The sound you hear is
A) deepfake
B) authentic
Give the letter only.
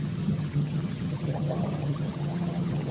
A